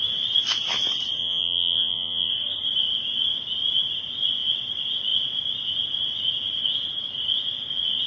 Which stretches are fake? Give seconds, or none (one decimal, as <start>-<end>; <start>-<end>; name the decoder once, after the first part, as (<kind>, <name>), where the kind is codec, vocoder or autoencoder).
1.2-2.3 (vocoder, Vocos)